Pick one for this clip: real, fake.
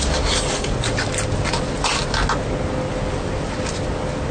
real